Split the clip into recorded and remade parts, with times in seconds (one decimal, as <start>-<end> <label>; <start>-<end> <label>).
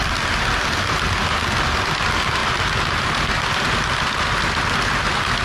0.0-5.4 recorded